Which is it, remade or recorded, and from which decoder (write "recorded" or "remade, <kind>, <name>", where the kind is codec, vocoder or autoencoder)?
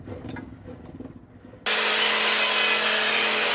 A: recorded